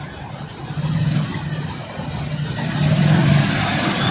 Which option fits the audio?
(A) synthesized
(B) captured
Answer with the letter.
B